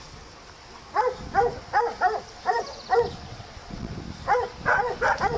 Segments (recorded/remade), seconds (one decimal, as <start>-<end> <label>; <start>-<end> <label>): 0.0-3.3 recorded; 3.3-3.9 remade; 3.9-5.4 recorded